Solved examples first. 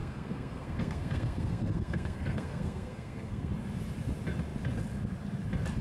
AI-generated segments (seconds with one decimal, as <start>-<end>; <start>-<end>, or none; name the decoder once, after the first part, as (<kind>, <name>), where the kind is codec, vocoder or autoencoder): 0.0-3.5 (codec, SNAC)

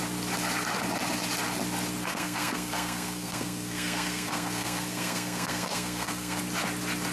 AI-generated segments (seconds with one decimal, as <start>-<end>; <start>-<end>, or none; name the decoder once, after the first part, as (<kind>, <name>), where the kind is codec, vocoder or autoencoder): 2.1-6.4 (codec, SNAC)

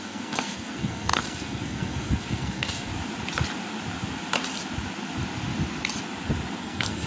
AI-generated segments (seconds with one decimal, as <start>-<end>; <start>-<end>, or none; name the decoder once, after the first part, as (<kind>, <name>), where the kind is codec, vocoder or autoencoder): 0.0-2.9 (codec, SNAC); 6.6-7.1